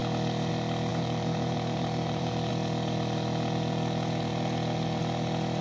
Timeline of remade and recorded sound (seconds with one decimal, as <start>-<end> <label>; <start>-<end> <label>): 0.0-0.9 recorded; 0.9-2.5 remade; 2.5-5.6 recorded